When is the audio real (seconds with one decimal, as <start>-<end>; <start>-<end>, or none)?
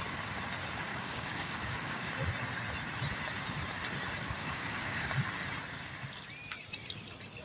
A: 0.0-0.9; 2.1-4.4; 5.1-7.4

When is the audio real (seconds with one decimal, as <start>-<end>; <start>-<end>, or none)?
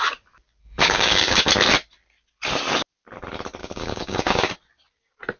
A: 0.0-0.6; 1.5-3.6; 4.5-5.4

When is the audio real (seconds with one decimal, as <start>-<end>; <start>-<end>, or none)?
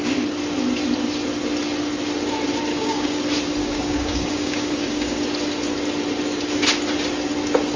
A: 0.0-2.7; 3.2-3.6; 5.2-7.8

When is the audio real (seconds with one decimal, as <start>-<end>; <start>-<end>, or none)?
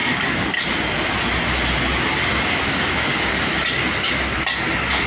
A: 0.6-2.3; 3.3-5.1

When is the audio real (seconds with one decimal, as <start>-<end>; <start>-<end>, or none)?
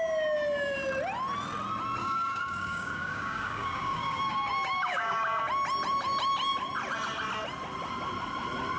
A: 0.0-2.0; 5.4-8.8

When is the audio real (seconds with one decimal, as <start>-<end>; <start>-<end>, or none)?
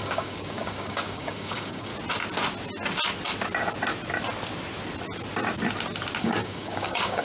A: 1.9-6.2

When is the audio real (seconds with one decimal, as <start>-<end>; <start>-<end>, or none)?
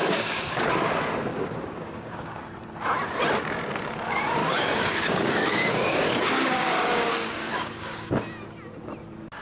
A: 0.7-1.3; 2.4-4.4; 8.1-9.4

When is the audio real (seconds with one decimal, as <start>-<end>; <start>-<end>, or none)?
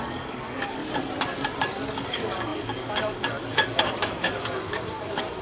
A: 0.8-1.9